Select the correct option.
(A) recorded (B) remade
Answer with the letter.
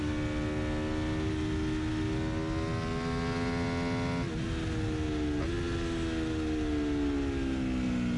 A